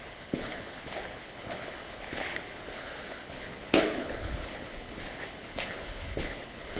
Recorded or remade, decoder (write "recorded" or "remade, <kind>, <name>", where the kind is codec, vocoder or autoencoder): remade, codec, HILCodec